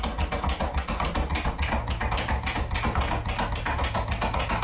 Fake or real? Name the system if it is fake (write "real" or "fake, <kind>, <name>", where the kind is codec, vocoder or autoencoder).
real